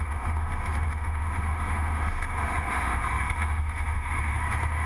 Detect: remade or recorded remade